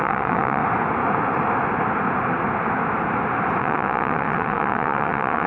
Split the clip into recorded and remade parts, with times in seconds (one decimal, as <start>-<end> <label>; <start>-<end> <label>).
0.0-0.6 remade; 0.6-3.6 recorded; 3.6-5.5 remade